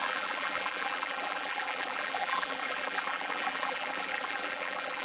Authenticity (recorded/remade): remade